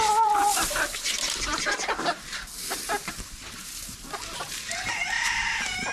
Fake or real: fake